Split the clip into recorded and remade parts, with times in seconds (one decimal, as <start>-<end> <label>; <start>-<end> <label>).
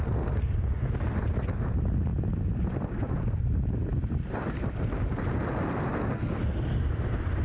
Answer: 0.0-7.4 recorded